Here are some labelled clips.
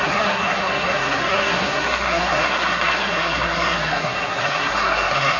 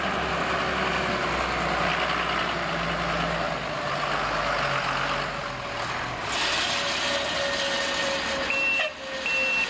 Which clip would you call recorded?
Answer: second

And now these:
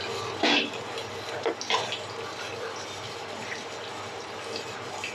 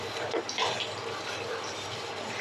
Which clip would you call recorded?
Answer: first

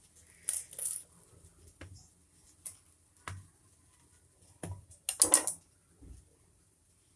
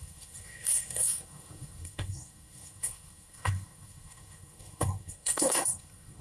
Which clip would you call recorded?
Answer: first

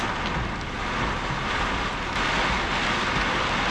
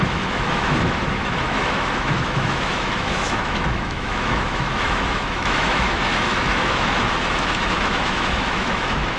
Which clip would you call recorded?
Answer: first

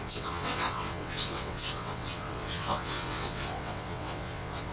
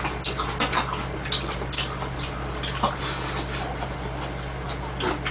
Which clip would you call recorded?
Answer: second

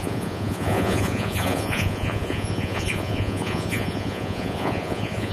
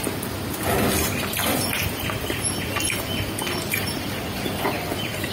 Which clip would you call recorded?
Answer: second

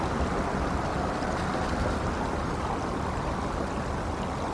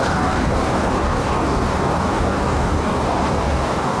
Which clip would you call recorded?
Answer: first